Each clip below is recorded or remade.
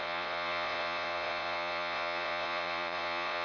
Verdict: remade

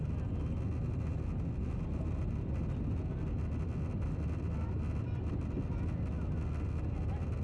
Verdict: recorded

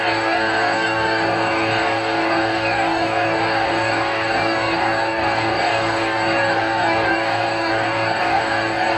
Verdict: remade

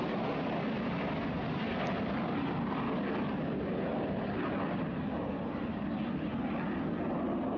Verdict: recorded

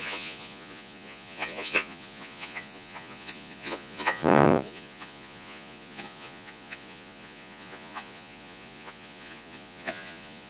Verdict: remade